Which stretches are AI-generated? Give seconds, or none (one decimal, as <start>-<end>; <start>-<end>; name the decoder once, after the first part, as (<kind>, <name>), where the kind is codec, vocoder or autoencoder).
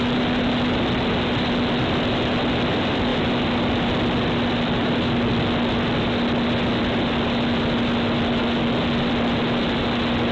none